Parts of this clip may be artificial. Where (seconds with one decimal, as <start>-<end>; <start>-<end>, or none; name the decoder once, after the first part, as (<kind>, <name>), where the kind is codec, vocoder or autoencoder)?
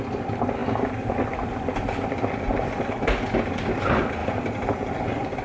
none